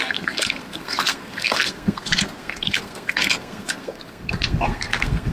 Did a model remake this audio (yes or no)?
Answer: yes